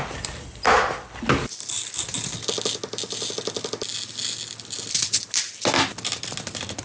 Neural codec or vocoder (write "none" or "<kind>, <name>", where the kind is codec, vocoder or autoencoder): none